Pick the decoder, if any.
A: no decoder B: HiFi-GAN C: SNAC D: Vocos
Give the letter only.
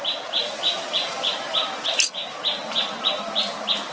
A